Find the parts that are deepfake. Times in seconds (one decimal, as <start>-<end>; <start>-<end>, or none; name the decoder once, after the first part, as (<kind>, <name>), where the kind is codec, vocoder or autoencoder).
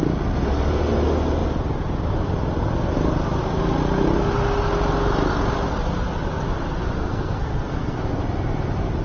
7.0-8.2 (codec, SNAC)